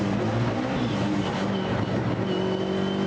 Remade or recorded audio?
recorded